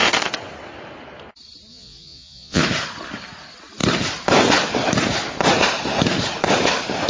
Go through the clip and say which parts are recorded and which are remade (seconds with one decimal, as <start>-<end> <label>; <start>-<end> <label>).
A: 0.0-1.7 recorded; 1.7-2.6 remade; 2.6-7.1 recorded